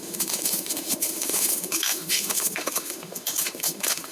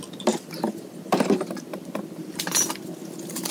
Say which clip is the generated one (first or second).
first